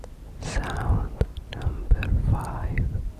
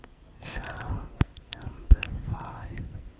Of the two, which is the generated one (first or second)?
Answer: second